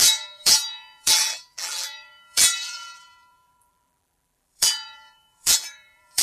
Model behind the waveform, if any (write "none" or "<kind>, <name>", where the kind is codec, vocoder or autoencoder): vocoder, BigVGAN v2